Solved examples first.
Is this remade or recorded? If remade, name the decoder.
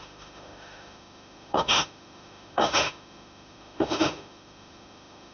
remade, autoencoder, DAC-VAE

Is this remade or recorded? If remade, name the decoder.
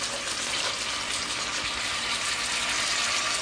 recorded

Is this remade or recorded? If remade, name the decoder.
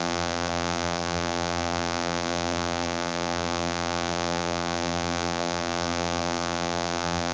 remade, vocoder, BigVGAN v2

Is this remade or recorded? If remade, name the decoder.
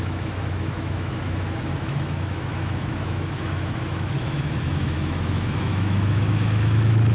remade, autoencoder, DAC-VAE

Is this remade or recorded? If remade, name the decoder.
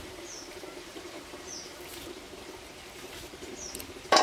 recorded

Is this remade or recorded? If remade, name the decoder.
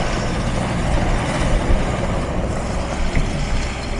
recorded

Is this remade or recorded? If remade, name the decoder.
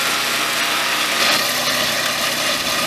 recorded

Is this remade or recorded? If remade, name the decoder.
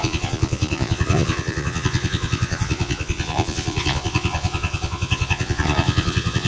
remade, vocoder, Vocos